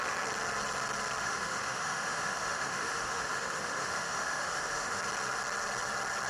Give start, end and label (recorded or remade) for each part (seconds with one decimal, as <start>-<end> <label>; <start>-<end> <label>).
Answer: 0.0-1.2 recorded; 1.2-5.0 remade; 5.0-6.3 recorded

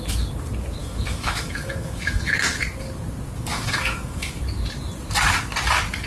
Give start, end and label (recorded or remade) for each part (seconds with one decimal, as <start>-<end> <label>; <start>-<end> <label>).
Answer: 0.0-0.8 recorded; 0.8-2.6 remade; 2.6-3.5 recorded; 3.5-4.4 remade; 4.4-6.1 recorded